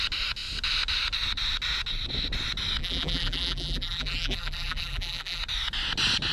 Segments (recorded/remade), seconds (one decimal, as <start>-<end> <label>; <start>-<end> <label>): 0.0-2.8 recorded; 2.8-5.4 remade; 5.4-6.3 recorded